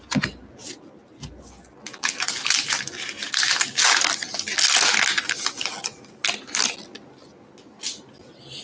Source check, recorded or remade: recorded